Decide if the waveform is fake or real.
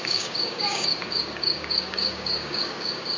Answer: fake